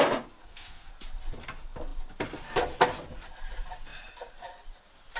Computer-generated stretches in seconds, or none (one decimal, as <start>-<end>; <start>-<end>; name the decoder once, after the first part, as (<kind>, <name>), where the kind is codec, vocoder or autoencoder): 0.4-0.9 (codec, SNAC)